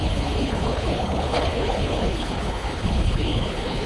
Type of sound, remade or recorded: remade